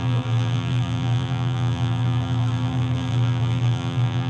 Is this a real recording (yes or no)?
no